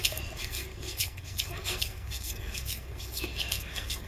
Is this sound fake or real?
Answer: fake